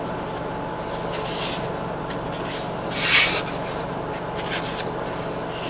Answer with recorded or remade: recorded